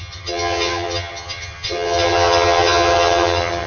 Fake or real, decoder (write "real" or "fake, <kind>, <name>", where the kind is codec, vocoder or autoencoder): fake, vocoder, HiFi-GAN